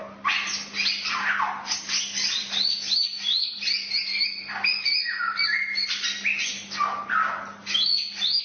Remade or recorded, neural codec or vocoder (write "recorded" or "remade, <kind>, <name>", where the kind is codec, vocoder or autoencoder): recorded